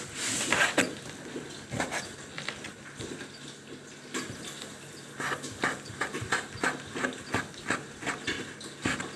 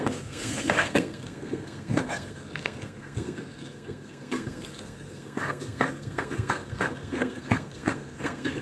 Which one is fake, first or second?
second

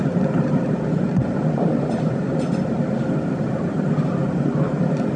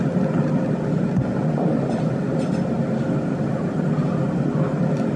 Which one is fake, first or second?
first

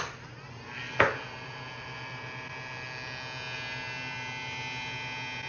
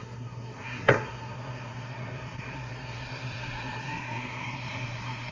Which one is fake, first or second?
second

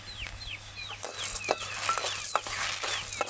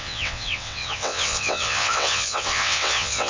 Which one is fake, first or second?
second